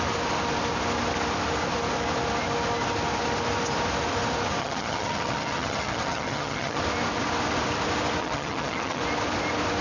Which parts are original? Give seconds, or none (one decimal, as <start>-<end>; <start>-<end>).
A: 0.0-4.6; 6.8-8.2; 9.0-9.8